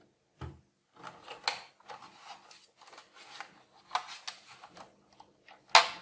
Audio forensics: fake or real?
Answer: real